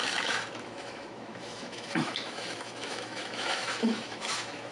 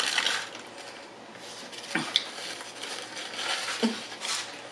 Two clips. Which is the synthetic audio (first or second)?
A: first